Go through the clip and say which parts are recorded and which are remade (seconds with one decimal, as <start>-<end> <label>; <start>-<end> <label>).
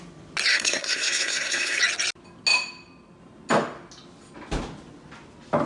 0.0-0.5 recorded; 0.5-1.8 remade; 1.8-5.7 recorded